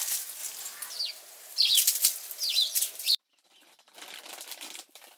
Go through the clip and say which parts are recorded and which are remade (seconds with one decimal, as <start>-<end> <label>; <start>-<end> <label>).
0.0-0.4 remade; 0.4-1.0 recorded; 1.0-5.2 remade